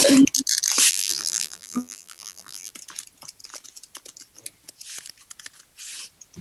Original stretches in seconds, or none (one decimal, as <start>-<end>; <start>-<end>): 0.0-0.9; 2.7-6.4